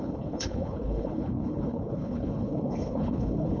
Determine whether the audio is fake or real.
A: fake